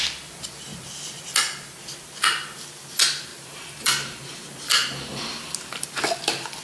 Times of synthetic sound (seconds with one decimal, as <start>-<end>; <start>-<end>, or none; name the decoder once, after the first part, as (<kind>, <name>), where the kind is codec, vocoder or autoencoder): none